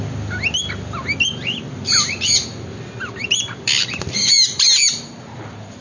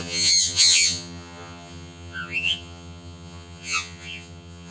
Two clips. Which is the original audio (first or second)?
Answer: first